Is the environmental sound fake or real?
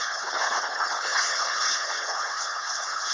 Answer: fake